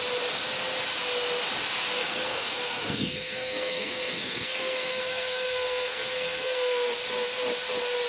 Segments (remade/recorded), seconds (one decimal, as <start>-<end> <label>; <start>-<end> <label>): 0.0-2.0 recorded; 2.0-6.9 remade; 6.9-8.1 recorded